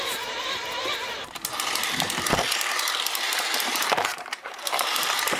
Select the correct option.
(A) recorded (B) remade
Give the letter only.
B